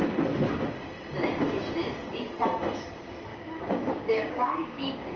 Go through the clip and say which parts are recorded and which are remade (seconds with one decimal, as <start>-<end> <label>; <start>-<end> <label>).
0.0-3.3 recorded; 3.3-5.2 remade